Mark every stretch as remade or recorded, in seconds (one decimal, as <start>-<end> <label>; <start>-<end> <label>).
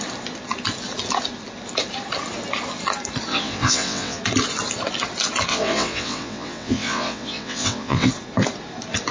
0.0-3.3 recorded; 3.3-4.2 remade; 4.2-5.5 recorded; 5.5-8.1 remade; 8.1-9.1 recorded